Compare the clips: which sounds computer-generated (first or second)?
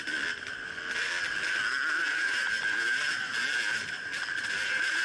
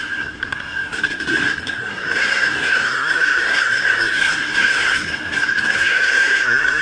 second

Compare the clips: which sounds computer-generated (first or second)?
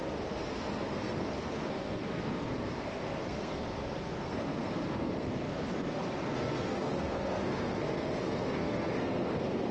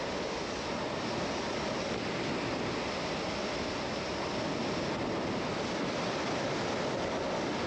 first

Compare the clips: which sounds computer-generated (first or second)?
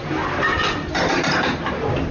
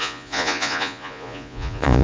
second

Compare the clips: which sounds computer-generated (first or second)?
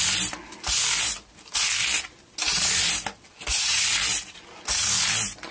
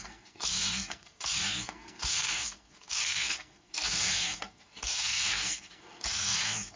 second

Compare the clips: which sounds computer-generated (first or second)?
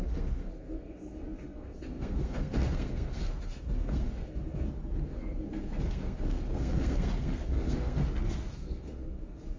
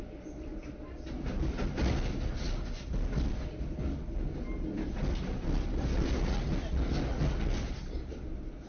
first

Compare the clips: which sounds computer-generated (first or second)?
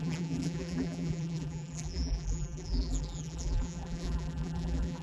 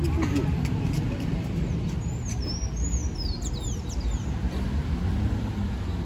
first